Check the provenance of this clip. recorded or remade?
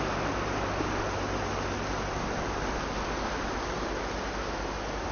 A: recorded